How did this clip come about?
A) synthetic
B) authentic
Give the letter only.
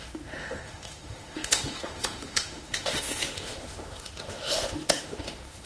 A